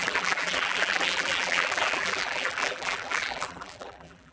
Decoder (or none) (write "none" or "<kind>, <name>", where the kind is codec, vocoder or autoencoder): vocoder, BigVGAN v2